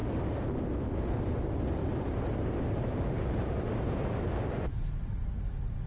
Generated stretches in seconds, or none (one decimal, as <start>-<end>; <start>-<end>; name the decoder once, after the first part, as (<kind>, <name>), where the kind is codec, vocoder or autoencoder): 0.0-0.6 (vocoder, BigVGAN v2); 1.8-5.3